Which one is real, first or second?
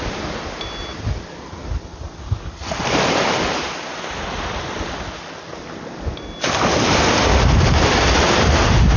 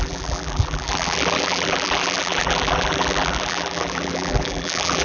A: first